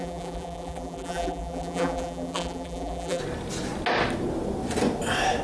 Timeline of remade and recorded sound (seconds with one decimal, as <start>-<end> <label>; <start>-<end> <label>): 0.0-3.2 remade; 3.2-5.4 recorded